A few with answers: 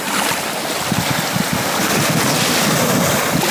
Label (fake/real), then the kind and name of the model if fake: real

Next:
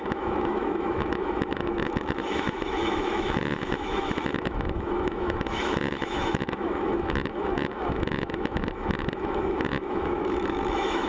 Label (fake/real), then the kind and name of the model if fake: fake, autoencoder, DAC-VAE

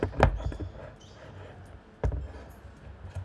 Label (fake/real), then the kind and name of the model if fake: real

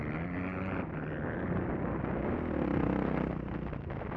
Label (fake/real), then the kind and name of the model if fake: real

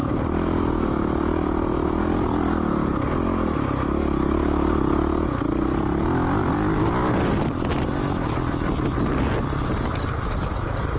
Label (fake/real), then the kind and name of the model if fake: real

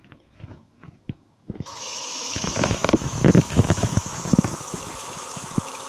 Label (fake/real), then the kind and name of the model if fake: fake, autoencoder, DAC-VAE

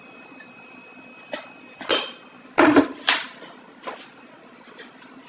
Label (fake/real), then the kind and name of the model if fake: real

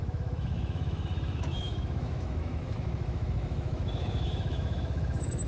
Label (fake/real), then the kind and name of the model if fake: fake, autoencoder, DAC-VAE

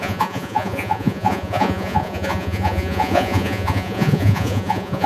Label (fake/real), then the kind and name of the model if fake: fake, vocoder, Vocos